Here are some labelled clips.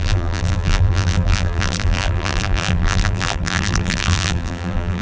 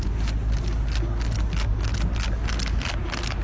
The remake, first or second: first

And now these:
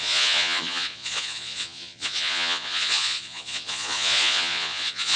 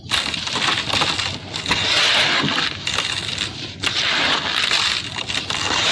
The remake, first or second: first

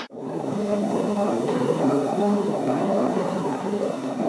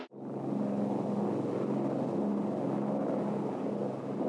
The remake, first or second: first